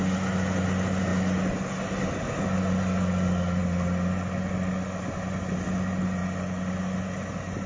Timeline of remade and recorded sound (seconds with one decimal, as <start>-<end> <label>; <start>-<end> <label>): 0.0-7.7 recorded